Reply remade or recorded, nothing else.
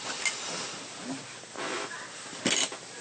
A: recorded